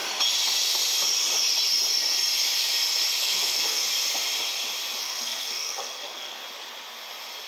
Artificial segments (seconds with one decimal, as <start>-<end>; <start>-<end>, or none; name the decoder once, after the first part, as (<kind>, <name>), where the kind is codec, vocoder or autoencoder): 3.2-3.8 (codec, SNAC); 5.0-6.4